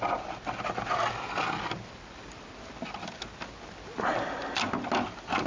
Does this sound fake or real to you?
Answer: real